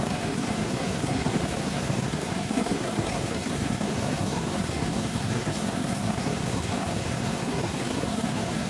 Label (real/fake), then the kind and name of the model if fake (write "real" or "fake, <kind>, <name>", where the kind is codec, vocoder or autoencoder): fake, codec, SNAC